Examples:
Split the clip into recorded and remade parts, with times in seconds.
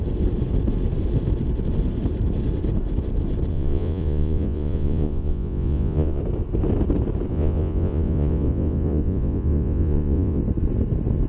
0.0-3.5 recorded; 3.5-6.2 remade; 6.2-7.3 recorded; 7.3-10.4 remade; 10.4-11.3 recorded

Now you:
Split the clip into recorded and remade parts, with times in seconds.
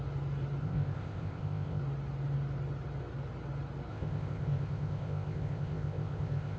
0.0-0.6 recorded; 0.6-1.8 remade; 1.8-3.9 recorded; 3.9-6.6 remade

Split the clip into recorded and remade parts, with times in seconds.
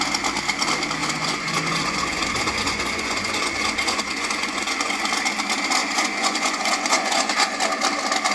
0.0-1.0 recorded; 1.0-5.1 remade; 5.1-5.8 recorded; 5.8-7.6 remade; 7.6-8.3 recorded